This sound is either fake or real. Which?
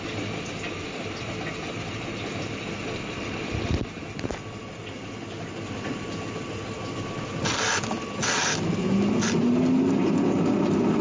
real